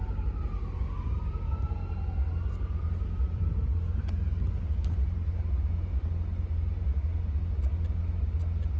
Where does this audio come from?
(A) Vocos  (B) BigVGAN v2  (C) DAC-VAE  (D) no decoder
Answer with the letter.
D